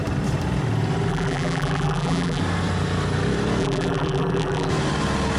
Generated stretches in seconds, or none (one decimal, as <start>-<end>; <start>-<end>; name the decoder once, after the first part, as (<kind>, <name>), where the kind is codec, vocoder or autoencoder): 1.1-2.4 (vocoder, BigVGAN v2); 3.6-4.7